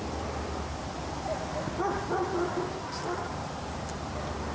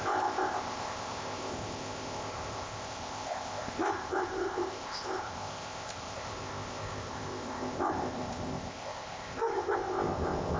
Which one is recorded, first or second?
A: first